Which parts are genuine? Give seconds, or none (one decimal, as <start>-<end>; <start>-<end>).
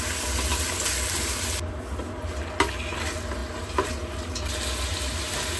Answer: 0.0-5.6